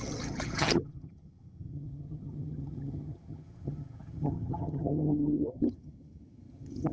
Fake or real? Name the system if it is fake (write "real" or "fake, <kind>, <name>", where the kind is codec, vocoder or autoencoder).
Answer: fake, vocoder, HiFi-GAN